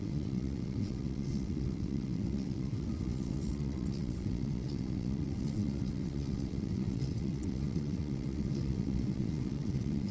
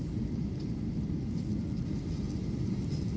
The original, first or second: second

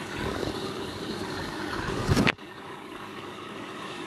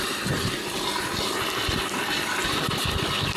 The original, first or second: second